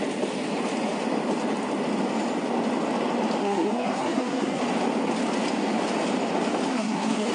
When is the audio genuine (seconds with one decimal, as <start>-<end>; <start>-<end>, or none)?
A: 0.0-3.4; 4.6-6.7